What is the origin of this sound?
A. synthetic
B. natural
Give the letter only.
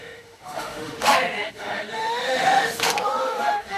A